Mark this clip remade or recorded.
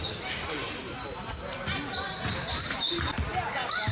recorded